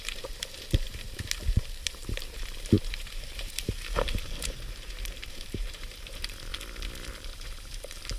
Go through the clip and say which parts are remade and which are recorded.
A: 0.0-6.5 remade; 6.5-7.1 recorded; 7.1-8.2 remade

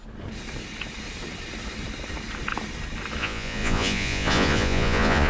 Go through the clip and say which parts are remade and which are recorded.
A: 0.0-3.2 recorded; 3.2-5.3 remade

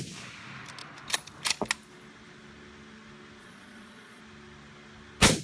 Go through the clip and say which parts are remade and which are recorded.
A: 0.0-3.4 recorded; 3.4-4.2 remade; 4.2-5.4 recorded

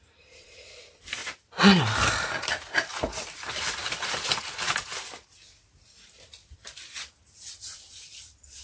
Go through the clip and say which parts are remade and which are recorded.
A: 0.0-8.6 recorded

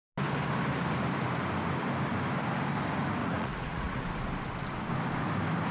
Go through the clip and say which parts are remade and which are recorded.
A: 0.0-3.2 recorded; 3.2-4.0 remade; 4.0-5.7 recorded